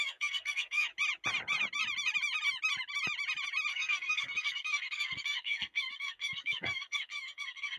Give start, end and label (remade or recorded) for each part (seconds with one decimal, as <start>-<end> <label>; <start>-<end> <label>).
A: 0.0-0.9 remade; 0.9-3.7 recorded; 3.7-7.8 remade

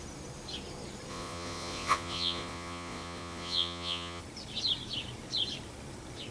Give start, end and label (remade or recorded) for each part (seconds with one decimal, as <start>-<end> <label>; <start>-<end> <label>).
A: 0.0-1.1 recorded; 1.1-4.2 remade; 4.2-6.3 recorded

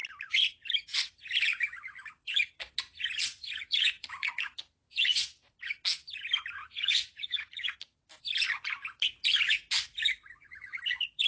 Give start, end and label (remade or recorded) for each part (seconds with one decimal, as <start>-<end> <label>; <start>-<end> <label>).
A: 0.0-3.4 recorded; 3.4-5.6 remade; 5.6-6.6 recorded; 6.6-7.7 remade; 7.7-11.3 recorded